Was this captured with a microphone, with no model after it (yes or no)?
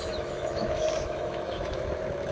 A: no